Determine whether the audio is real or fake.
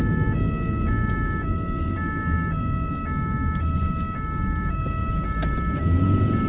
real